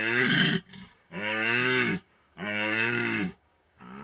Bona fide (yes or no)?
no